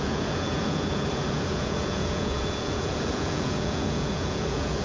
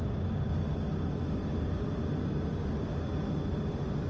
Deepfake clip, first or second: first